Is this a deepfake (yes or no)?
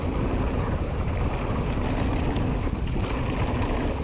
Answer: no